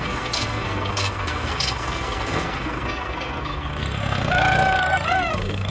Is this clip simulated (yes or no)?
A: yes